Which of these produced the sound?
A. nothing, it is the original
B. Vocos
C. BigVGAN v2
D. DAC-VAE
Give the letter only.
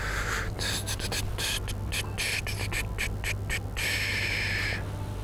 A